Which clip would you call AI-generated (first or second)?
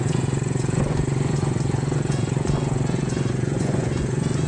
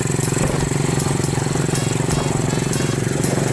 first